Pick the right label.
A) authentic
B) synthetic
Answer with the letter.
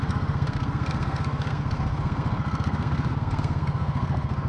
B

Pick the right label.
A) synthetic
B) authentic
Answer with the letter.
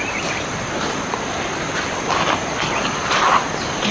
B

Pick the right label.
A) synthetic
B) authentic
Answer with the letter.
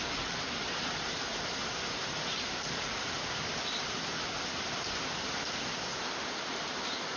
B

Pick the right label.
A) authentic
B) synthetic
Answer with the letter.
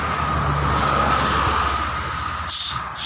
A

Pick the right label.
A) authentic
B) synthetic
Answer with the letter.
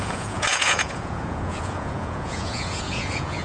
B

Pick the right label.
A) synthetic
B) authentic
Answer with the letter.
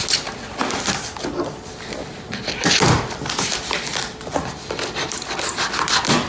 B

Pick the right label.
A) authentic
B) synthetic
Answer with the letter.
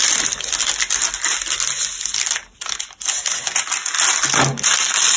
A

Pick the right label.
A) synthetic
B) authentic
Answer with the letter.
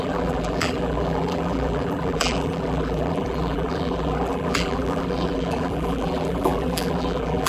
A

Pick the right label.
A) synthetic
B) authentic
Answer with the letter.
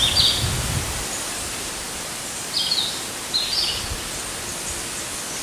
B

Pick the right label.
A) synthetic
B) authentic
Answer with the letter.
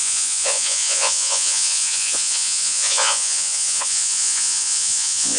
A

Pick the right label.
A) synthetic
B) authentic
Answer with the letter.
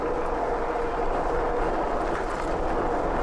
B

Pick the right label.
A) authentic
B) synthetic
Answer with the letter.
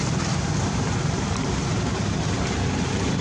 A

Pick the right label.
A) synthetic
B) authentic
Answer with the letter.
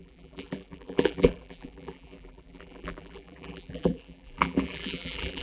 A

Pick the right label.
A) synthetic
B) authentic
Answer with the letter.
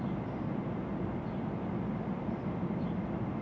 B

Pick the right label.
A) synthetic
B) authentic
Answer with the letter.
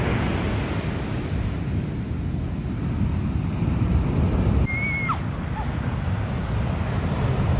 B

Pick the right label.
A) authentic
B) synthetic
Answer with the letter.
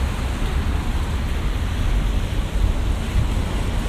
A